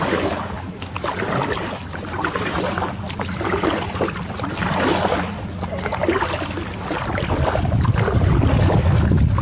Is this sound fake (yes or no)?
no